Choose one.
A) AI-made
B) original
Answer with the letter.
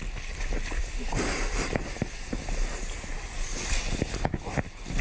B